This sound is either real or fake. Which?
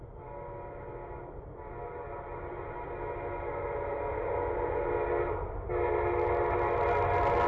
real